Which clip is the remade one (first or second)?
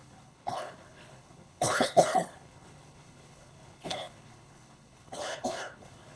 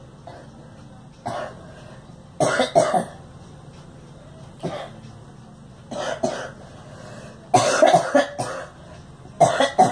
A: first